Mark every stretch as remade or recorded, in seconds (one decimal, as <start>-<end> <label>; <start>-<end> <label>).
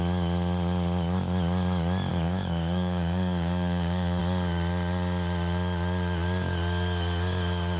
0.0-2.1 recorded; 2.1-4.2 remade; 4.2-7.8 recorded